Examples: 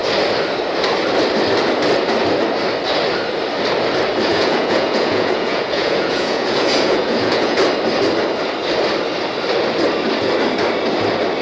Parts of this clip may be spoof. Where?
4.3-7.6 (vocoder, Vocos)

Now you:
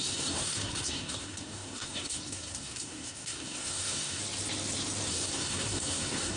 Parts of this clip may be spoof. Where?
0.0-4.2 (codec, SNAC); 5.1-6.4

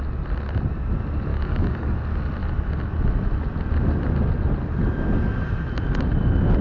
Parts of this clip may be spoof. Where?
1.3-1.9 (codec, DAC)

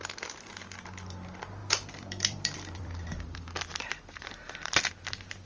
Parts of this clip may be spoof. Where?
1.6-4.9 (vocoder, BigVGAN v2)

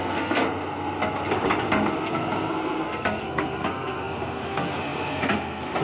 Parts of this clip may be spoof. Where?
0.0-0.4 (codec, SNAC); 2.0-5.8

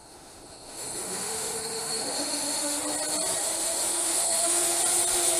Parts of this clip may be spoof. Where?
0.0-2.8 (autoencoder, DAC-VAE); 3.4-4.8

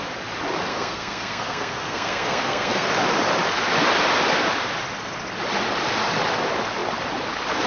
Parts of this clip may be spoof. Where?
0.7-2.9 (codec, SNAC)